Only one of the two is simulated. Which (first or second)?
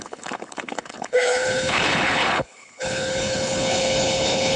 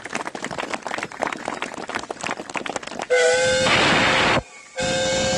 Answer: first